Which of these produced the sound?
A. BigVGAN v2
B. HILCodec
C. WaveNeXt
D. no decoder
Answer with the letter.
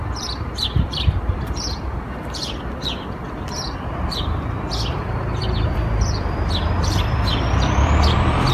A